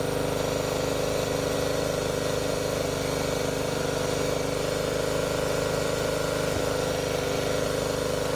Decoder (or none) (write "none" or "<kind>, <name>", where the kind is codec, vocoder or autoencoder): none